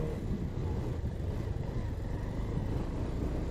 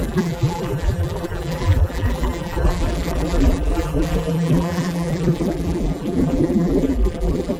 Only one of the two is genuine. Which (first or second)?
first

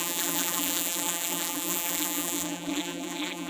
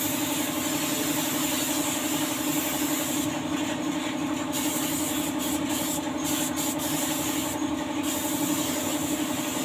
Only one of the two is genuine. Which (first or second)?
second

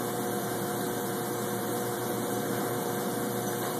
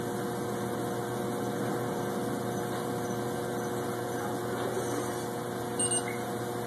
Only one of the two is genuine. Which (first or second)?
second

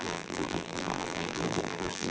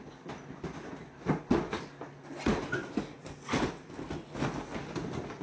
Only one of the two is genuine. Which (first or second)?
second